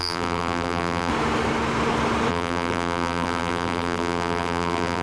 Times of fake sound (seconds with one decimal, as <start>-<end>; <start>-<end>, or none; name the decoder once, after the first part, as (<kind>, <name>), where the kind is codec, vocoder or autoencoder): 0.0-1.1 (vocoder, BigVGAN v2); 2.3-5.0